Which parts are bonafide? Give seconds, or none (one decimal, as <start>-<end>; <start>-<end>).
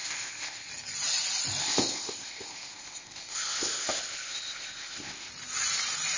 0.7-1.6; 5.3-6.2